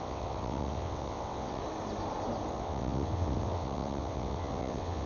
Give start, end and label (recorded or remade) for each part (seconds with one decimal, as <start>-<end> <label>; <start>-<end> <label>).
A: 0.0-1.6 remade; 1.6-2.5 recorded; 2.5-5.1 remade